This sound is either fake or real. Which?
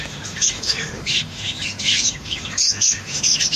fake